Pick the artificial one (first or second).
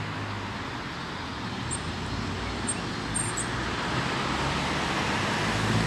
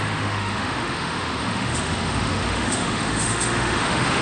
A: second